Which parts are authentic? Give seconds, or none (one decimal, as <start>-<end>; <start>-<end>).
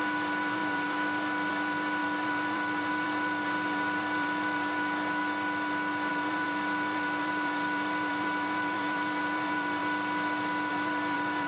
5.2-6.1; 9.8-10.7